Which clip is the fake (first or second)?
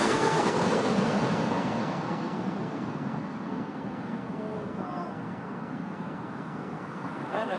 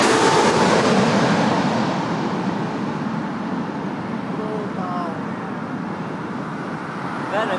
first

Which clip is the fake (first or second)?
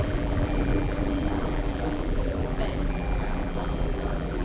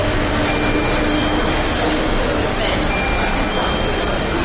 first